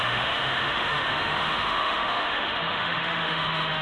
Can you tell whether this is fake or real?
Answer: fake